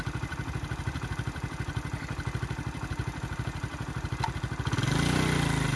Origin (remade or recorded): recorded